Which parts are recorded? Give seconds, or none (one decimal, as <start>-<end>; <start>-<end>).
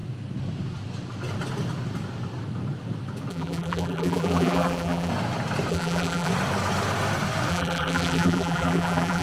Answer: 0.0-3.3; 5.1-5.7; 6.3-7.5